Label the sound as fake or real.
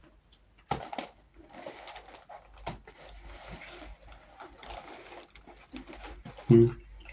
real